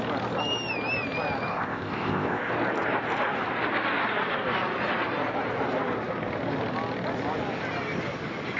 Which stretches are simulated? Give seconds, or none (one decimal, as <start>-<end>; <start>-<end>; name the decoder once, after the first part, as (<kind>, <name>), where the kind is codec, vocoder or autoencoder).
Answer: 1.5-2.5 (codec, ZipCodec)

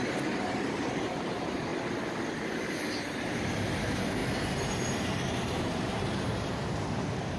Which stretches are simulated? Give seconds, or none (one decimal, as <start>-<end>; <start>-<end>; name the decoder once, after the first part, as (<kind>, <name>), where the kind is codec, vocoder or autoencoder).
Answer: 0.0-1.7 (vocoder, BigVGAN v2); 2.9-7.4

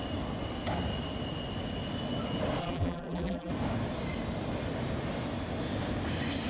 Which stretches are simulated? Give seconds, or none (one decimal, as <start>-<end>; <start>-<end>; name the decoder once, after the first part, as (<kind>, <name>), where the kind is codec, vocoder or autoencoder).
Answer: 2.6-3.5 (vocoder, BigVGAN v2)

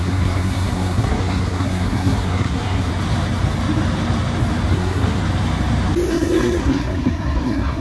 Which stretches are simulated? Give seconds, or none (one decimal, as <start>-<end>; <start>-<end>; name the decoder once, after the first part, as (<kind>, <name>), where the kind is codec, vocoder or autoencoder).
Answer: 0.0-2.9 (codec, SNAC); 4.7-5.2; 6.1-7.8

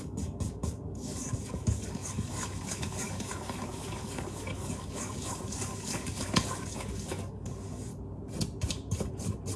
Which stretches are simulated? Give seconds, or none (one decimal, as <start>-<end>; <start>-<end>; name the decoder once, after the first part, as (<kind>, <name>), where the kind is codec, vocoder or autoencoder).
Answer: 0.0-7.9 (codec, DAC)

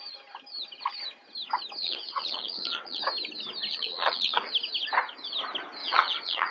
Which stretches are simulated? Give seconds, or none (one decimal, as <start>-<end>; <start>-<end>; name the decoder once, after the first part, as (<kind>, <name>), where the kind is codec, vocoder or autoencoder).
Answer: 1.8-3.0 (vocoder, WaveNeXt); 3.7-4.5; 5.8-6.5

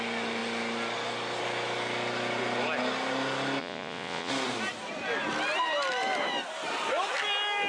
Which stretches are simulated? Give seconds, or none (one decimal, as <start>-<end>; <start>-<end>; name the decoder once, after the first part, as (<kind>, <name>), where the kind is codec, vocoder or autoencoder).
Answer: 3.6-4.3 (vocoder, Vocos)